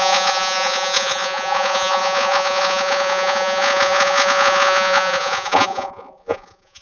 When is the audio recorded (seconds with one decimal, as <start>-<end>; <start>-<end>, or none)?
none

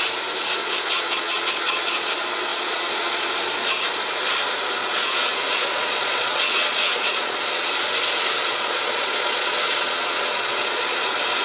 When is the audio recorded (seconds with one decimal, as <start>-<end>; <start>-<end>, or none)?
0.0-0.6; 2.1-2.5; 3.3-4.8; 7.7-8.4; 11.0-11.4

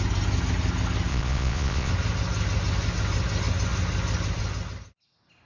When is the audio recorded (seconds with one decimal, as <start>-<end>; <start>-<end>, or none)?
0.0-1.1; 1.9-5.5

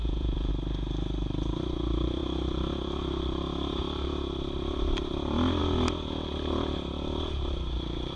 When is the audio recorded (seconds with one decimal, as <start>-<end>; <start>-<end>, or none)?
0.5-8.2

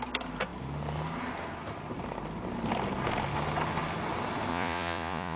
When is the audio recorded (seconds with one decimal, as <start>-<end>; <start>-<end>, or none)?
0.0-4.5

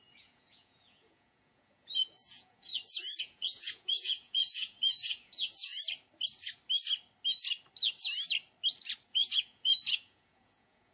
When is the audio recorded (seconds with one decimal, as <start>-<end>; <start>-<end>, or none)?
2.7-3.2; 5.7-9.1

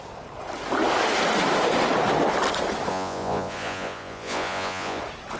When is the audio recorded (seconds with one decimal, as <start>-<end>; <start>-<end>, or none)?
0.0-2.9; 5.0-5.4